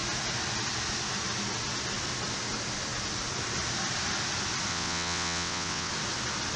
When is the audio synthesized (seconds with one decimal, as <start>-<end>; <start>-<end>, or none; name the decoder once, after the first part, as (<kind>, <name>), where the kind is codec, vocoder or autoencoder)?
4.7-5.9 (vocoder, WaveNeXt)